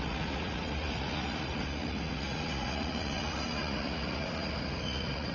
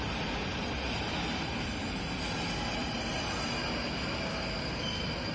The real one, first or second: second